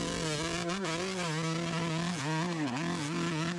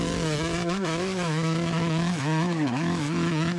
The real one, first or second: first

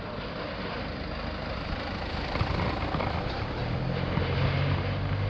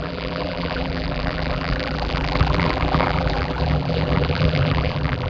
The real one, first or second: first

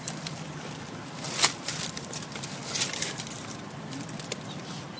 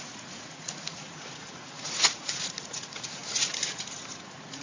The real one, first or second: first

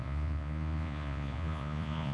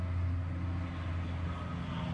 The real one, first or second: second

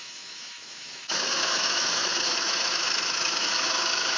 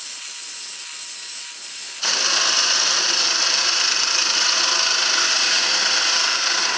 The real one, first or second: second